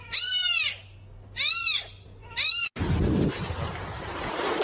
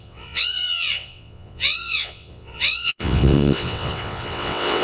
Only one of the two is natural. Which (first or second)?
first